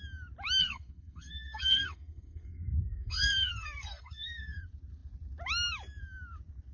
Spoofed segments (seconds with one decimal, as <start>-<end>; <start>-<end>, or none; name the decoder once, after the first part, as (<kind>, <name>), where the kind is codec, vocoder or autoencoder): 0.6-4.6 (codec, SNAC)